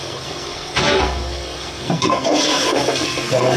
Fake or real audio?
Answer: fake